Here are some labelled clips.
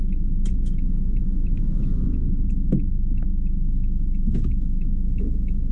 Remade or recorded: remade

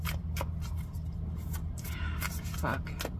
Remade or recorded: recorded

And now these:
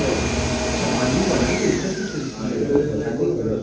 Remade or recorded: recorded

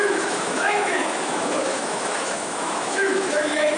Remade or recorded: remade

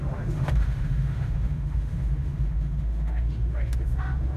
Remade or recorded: remade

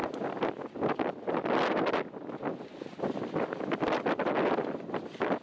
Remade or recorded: recorded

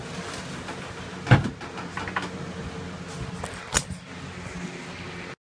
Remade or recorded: recorded